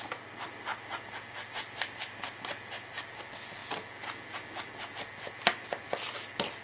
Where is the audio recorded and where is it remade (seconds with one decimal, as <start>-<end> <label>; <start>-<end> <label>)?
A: 0.0-6.6 recorded